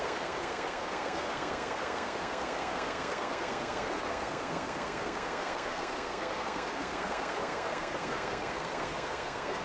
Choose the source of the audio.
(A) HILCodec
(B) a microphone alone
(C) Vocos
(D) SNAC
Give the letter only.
D